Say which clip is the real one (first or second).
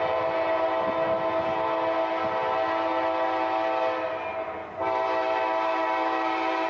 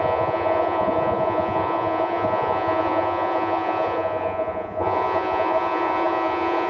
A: first